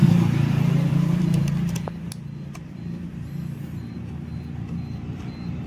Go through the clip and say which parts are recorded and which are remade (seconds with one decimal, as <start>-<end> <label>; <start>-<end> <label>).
0.0-0.9 recorded; 0.9-5.7 remade